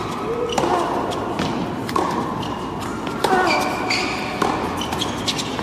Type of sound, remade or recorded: recorded